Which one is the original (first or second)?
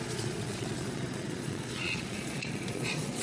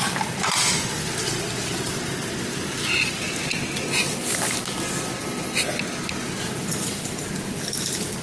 second